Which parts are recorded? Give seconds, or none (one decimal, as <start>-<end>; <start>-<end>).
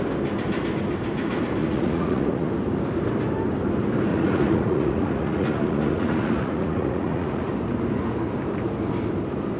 0.0-1.6; 2.5-4.1; 7.5-9.6